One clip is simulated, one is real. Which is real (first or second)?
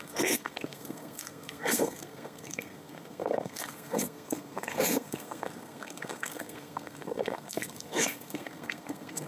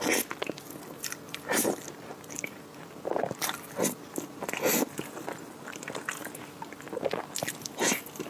second